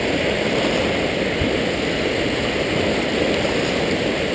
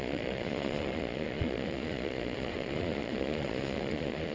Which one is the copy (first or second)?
second